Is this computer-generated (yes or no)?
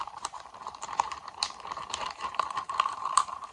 yes